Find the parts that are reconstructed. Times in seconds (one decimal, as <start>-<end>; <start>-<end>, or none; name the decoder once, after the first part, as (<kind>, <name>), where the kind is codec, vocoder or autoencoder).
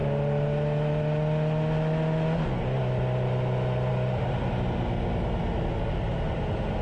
none